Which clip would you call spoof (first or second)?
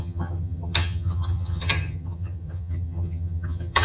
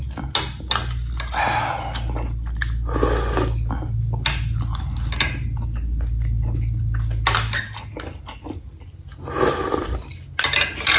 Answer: first